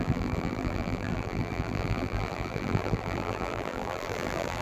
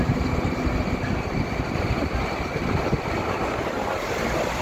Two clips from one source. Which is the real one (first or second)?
second